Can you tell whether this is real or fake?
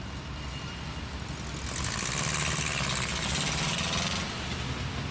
real